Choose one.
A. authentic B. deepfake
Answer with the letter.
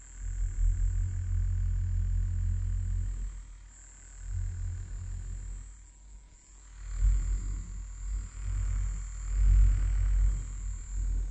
A